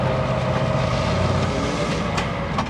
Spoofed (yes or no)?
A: no